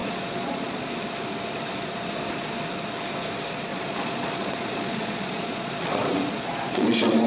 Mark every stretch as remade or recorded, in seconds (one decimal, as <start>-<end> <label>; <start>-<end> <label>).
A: 0.0-0.8 remade; 0.8-3.7 recorded; 3.7-7.3 remade